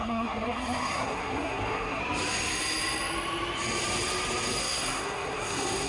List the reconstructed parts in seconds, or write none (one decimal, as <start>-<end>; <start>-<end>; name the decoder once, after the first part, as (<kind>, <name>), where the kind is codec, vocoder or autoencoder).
0.0-2.0 (codec, SNAC); 4.6-5.9

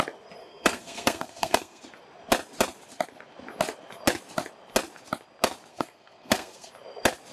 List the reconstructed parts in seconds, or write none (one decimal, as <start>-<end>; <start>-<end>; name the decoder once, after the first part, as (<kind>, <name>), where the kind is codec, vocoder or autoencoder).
0.4-1.8 (codec, SNAC); 5.7-6.7

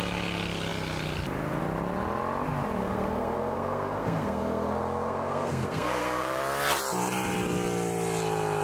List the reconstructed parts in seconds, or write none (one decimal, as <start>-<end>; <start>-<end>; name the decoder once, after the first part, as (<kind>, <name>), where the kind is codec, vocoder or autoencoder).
2.8-6.4 (codec, SNAC)

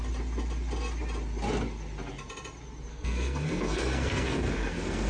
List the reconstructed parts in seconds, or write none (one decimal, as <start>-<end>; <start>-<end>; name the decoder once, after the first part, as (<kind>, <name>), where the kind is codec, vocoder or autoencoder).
2.9-5.1 (codec, SNAC)